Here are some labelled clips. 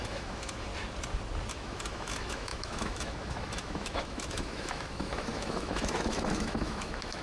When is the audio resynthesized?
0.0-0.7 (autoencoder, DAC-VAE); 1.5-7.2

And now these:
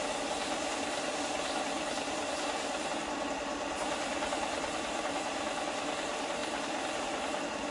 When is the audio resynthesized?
0.0-6.4 (vocoder, BigVGAN v2); 7.0-7.7

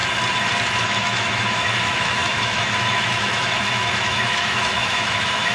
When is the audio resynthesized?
0.8-5.5 (autoencoder, DAC-VAE)

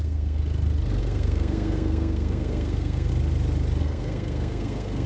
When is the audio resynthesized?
0.0-0.4 (codec, SNAC); 1.0-3.1; 3.8-5.1

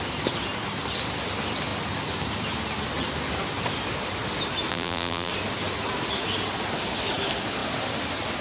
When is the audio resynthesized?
4.7-5.3 (vocoder, BigVGAN v2)